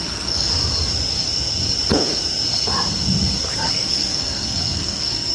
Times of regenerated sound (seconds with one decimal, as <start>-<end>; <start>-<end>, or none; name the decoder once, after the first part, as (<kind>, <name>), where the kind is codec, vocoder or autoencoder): 0.0-0.5 (codec, SNAC); 3.7-5.3